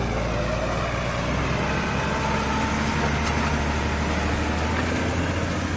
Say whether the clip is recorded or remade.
recorded